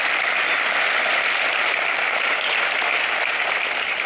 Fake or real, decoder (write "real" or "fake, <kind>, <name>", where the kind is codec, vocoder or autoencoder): real